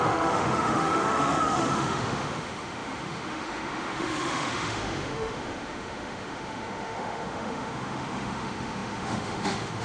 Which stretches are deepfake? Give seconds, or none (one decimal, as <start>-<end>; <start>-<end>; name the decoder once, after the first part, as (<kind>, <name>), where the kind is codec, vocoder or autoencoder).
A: 0.0-9.8 (autoencoder, DAC-VAE)